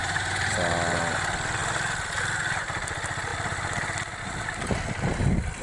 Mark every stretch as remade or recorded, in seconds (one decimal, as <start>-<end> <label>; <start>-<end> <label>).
0.0-0.5 remade; 0.5-5.6 recorded